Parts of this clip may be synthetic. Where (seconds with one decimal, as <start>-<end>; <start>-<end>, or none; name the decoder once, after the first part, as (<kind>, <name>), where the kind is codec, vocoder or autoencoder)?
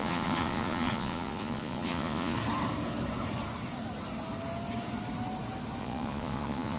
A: 0.0-2.4 (vocoder, Vocos); 5.8-6.8